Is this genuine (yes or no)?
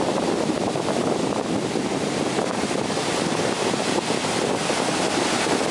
yes